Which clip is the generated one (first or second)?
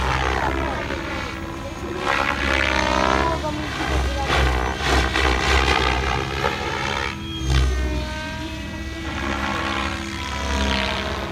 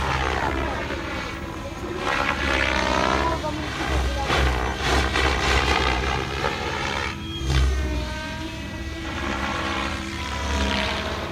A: second